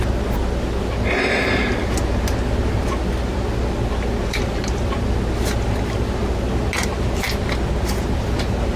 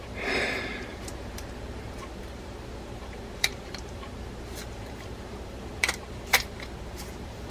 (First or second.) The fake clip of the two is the second